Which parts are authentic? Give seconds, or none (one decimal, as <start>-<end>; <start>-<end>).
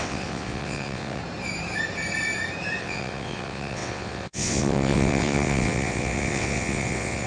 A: 1.2-2.8